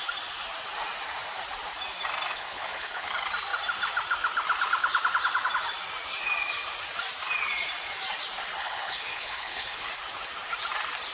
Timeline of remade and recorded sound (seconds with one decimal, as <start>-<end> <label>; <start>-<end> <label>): 0.0-2.3 recorded; 2.3-3.1 remade; 3.1-8.6 recorded; 8.6-9.9 remade; 9.9-11.1 recorded

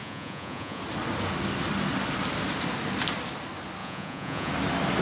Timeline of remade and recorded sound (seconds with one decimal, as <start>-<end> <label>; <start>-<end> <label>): 0.0-0.8 remade; 0.8-3.8 recorded; 3.8-4.5 remade; 4.5-5.0 recorded

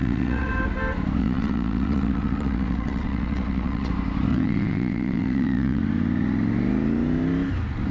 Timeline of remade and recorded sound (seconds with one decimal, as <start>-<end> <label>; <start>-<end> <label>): 0.0-0.5 remade; 0.5-1.2 recorded; 1.2-3.9 remade; 3.9-4.3 recorded; 4.3-5.8 remade; 5.8-7.9 recorded

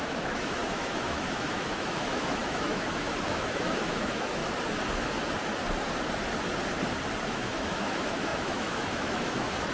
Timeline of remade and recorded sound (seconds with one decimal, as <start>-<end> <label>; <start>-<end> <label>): 0.0-4.4 remade; 4.4-7.2 recorded; 7.2-9.7 remade

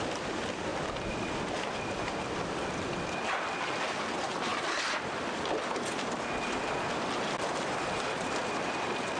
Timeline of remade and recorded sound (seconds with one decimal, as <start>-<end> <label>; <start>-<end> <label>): 0.0-9.2 recorded

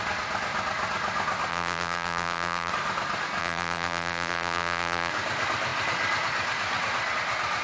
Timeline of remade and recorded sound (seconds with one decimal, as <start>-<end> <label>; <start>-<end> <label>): 0.0-1.5 recorded; 1.5-2.7 remade; 2.7-3.4 recorded; 3.4-5.1 remade; 5.1-7.6 recorded

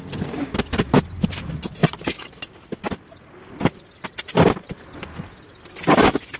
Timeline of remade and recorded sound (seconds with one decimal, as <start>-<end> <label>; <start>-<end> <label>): 0.0-6.4 recorded